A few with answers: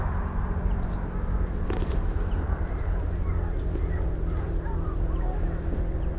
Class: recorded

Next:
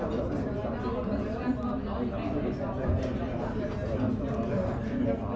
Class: recorded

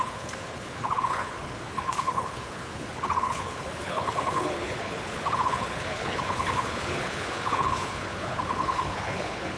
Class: remade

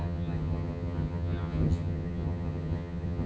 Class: remade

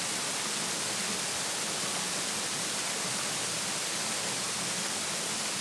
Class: recorded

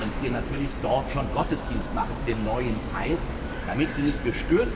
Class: remade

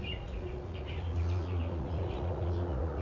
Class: remade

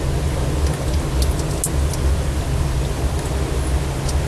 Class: recorded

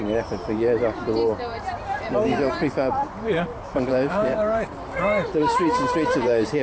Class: remade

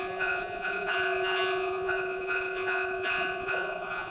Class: remade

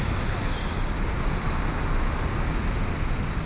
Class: recorded